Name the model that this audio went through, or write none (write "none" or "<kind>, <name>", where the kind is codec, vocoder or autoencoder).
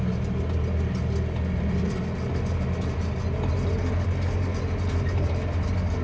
none